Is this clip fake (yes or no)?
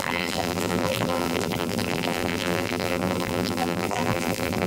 yes